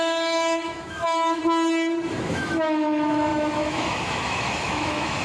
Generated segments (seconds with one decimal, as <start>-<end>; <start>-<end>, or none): 0.0-1.4; 2.1-5.2